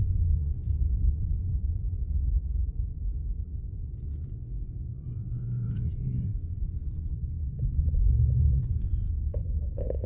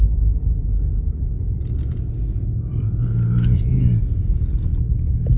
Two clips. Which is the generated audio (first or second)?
first